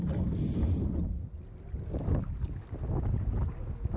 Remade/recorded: recorded